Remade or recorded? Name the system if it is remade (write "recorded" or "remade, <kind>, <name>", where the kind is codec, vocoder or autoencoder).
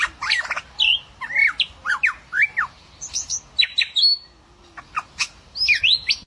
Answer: recorded